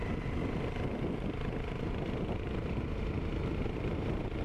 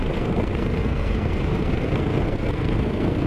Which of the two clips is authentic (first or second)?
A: first